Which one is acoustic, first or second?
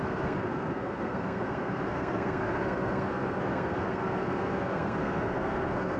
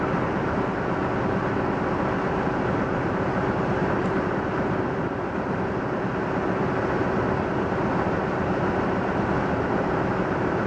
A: second